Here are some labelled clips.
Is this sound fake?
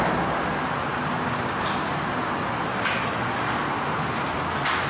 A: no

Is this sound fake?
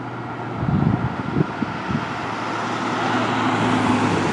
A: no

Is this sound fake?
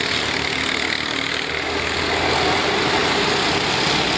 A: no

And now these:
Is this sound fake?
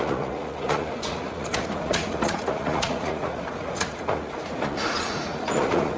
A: yes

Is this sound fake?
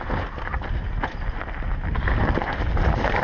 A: no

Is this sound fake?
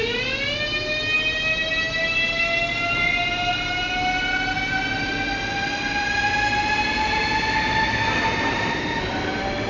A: no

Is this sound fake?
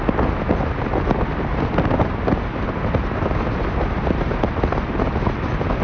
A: no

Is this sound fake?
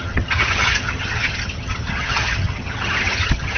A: yes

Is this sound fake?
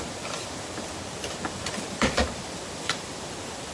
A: yes